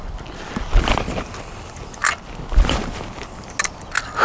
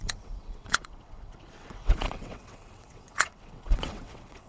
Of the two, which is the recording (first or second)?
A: first